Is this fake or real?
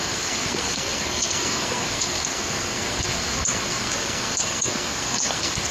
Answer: fake